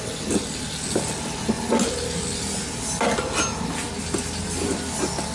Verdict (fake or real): real